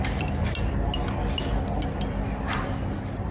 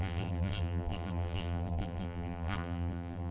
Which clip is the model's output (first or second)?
second